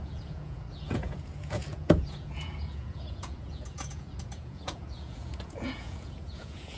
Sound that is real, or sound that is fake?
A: fake